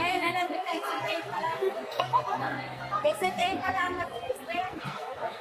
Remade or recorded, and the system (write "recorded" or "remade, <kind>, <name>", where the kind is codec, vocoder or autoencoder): remade, codec, SNAC